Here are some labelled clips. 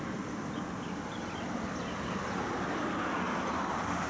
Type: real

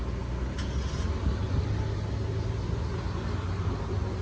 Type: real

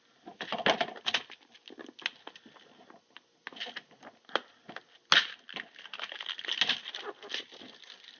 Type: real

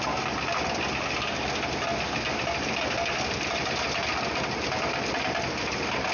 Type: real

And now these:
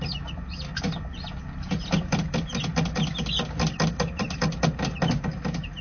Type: real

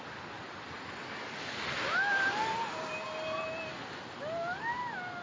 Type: real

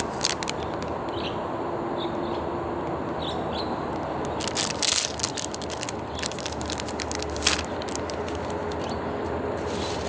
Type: real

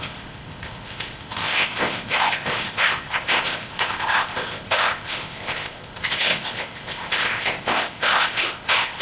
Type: fake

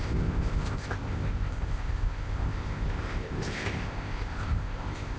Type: fake